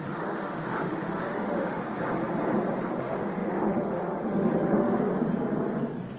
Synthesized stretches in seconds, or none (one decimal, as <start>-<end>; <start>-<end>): 0.0-1.8; 3.0-5.1